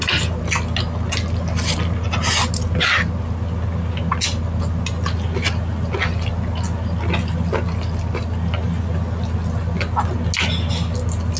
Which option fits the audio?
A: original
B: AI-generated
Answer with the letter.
A